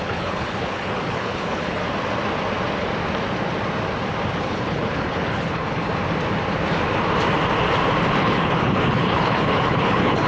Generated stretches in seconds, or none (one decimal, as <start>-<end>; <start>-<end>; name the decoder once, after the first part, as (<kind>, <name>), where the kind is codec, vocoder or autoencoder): 0.0-1.8 (codec, HILCodec); 4.4-5.9; 8.2-10.3